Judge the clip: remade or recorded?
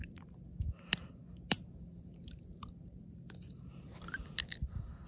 recorded